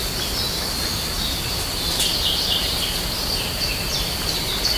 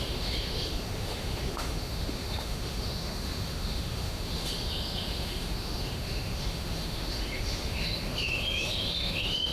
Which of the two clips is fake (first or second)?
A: second